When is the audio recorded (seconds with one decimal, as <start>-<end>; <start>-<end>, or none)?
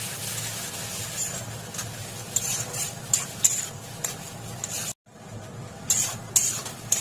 0.0-7.0